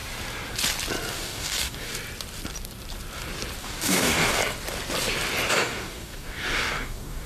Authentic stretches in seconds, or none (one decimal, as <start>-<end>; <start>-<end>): 0.0-1.1; 1.9-3.6; 4.4-5.5